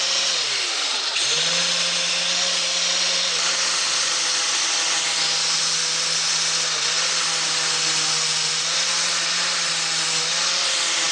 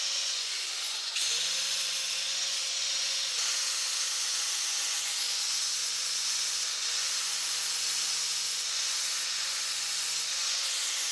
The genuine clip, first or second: first